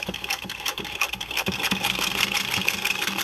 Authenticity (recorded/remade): remade